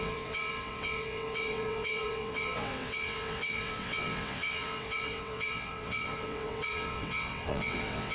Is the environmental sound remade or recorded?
remade